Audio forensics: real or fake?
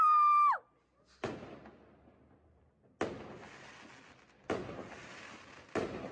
real